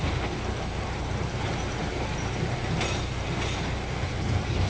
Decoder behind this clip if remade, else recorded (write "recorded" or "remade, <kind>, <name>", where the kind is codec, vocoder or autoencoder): remade, vocoder, BigVGAN v2